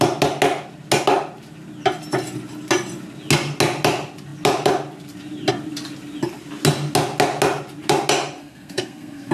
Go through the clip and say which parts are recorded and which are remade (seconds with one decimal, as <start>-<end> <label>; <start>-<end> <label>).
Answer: 0.0-8.4 recorded; 8.4-9.3 remade